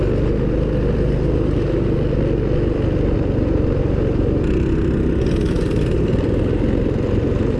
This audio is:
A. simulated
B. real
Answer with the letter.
B